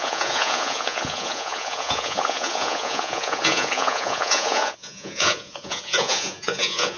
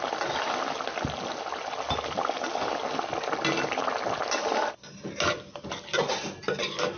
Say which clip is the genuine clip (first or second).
second